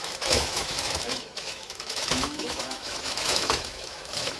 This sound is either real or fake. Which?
fake